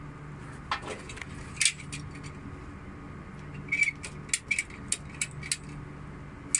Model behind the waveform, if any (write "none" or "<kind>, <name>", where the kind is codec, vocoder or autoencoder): none